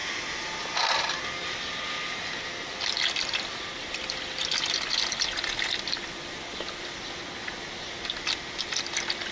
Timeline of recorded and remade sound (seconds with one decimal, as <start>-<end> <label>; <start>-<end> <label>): 0.0-9.3 recorded